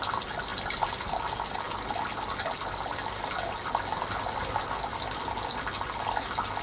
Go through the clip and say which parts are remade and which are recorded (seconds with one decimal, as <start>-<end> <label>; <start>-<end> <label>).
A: 0.0-6.6 recorded